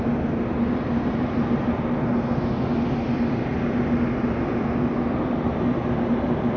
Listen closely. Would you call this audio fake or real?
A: real